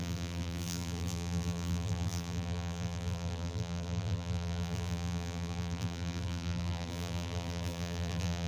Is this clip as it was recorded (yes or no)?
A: no